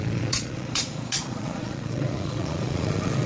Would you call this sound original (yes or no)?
no